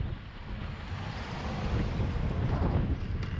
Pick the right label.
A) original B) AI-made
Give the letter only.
A